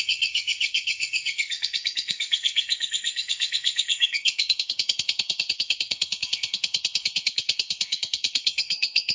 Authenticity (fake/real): fake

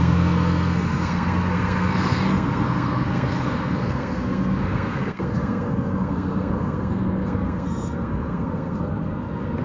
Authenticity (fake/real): fake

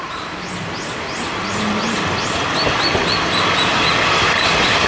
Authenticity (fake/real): real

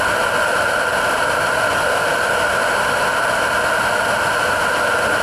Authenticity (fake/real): real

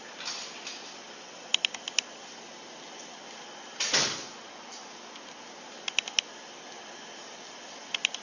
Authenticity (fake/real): real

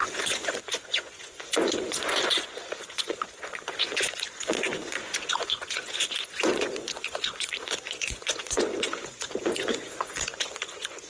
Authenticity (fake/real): fake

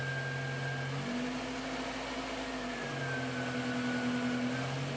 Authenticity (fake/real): real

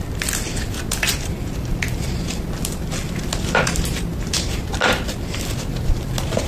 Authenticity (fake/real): real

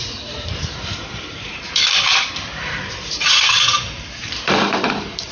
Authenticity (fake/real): fake